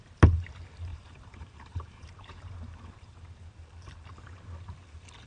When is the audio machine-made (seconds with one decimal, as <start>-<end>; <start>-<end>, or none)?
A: 0.9-4.1